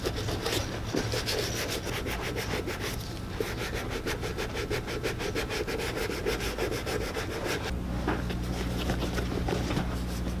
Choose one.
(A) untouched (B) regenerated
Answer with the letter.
A